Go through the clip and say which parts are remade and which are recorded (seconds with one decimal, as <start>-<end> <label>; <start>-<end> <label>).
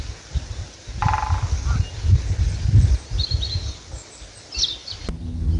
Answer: 0.0-5.6 recorded